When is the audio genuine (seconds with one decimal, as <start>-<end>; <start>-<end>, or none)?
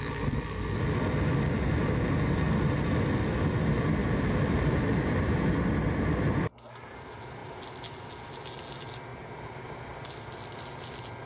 0.0-4.0; 5.4-9.1; 9.8-11.3